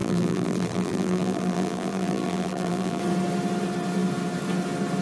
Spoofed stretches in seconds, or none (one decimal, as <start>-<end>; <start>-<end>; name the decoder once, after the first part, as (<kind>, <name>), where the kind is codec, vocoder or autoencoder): 0.0-3.0 (vocoder, BigVGAN v2)